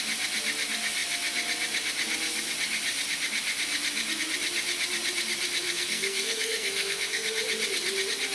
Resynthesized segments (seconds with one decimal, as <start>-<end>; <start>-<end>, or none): 5.6-7.4